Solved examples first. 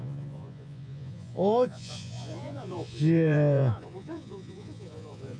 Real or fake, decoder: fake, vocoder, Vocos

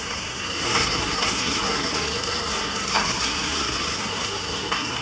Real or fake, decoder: fake, codec, SNAC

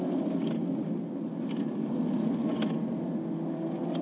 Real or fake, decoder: real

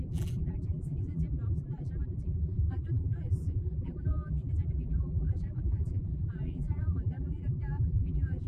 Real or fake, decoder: fake, vocoder, BigVGAN v2